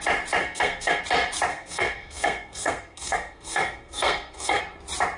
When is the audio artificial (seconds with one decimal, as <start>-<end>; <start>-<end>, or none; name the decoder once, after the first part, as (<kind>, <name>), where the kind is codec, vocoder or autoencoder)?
0.4-1.0 (codec, SNAC); 1.5-4.6